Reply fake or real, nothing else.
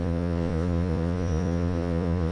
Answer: fake